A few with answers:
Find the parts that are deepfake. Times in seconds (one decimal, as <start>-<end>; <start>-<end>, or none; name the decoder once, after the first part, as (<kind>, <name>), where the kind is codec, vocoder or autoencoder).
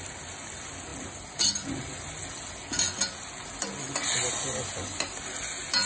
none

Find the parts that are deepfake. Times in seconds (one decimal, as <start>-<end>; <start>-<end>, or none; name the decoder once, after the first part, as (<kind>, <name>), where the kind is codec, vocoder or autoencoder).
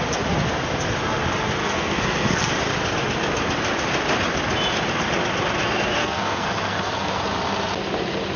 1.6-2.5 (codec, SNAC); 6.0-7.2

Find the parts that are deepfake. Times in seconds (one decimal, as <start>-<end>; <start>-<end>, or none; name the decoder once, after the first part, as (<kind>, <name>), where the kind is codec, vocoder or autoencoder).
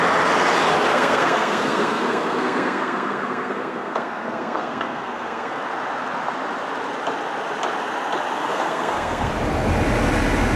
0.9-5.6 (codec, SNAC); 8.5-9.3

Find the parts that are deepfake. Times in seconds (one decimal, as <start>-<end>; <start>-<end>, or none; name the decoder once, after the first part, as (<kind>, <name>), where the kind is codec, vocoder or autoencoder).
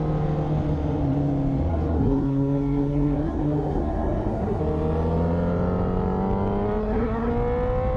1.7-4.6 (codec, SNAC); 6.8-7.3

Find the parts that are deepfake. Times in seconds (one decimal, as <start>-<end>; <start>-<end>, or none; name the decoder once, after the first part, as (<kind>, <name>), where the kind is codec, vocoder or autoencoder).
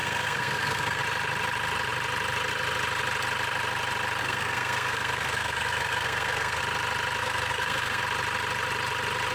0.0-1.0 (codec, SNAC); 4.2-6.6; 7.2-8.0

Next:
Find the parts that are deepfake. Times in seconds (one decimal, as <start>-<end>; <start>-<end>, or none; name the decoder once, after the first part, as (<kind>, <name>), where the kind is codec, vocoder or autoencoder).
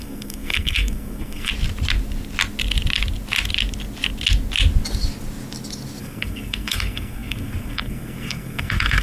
0.0-1.5 (codec, SNAC); 6.0-9.0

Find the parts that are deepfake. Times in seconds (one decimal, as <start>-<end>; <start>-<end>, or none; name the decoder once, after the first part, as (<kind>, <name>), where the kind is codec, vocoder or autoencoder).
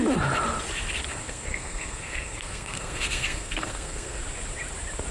1.1-4.2 (codec, SNAC)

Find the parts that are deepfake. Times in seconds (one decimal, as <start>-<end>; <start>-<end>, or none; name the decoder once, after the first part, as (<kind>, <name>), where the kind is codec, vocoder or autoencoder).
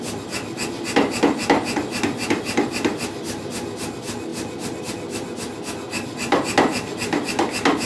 none